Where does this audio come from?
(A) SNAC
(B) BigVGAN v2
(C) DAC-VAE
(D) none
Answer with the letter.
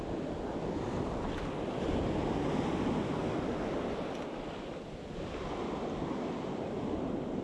D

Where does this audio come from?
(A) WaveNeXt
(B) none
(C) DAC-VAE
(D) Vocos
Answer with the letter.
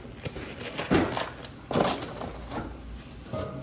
B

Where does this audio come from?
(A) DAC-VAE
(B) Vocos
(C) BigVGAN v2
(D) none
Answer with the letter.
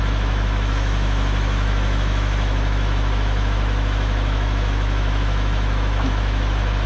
A